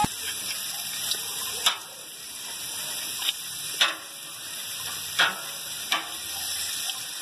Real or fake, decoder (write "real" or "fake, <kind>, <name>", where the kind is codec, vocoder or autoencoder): real